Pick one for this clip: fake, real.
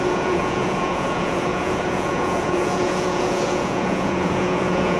fake